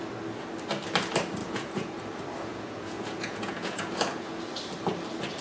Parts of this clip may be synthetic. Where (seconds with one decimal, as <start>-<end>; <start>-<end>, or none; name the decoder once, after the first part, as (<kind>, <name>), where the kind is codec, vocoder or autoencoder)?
1.4-2.0 (vocoder, Vocos); 2.5-4.5